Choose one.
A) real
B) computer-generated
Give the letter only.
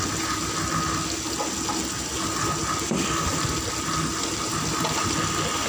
A